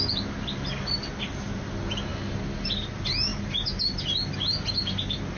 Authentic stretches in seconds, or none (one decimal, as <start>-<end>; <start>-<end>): 0.0-5.4